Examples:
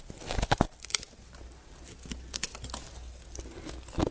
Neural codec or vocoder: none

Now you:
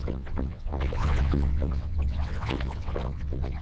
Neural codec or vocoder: vocoder, WaveNeXt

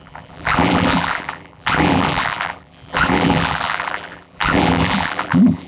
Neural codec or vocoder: vocoder, BigVGAN v2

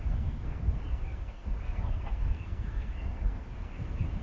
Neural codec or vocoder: codec, SNAC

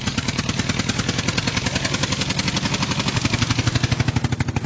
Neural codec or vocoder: none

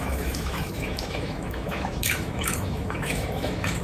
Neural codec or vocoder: autoencoder, DAC-VAE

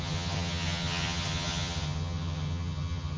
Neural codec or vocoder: vocoder, HiFi-GAN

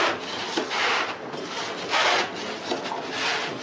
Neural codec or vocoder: none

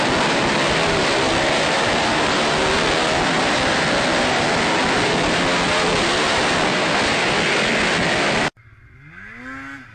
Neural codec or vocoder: none